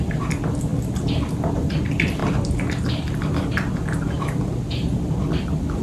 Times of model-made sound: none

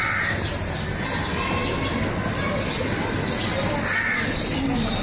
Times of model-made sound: none

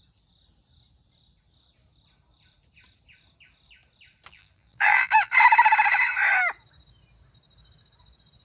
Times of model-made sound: 4.3-5.3 (vocoder, BigVGAN v2)

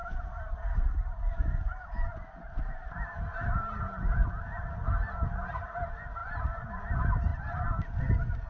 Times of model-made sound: none

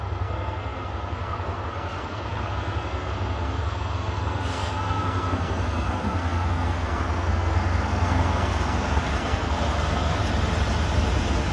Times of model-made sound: 0.0-10.2 (codec, SNAC)